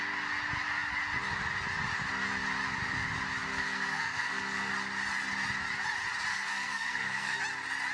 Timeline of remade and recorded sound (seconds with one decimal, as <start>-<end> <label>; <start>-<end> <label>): 0.0-3.5 recorded; 3.5-4.7 remade; 4.7-6.3 recorded; 6.3-7.4 remade; 7.4-7.9 recorded